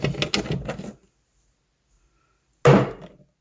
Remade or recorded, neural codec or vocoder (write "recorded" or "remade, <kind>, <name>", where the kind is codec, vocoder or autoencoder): recorded